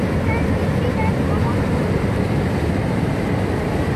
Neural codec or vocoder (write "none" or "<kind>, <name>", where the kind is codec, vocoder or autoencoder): none